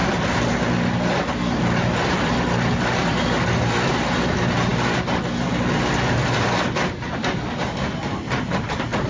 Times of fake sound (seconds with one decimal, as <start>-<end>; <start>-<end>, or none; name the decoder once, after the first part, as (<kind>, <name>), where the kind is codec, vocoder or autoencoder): none